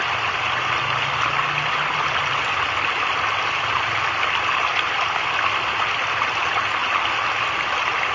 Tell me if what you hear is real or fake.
real